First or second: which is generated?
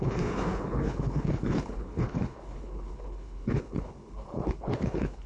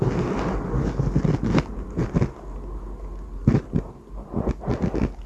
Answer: first